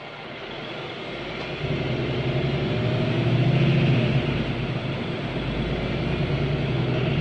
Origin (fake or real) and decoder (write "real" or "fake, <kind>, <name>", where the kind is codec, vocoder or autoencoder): real